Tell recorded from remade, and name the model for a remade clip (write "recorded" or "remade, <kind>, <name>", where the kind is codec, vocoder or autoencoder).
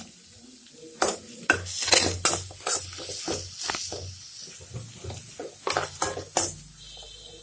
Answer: recorded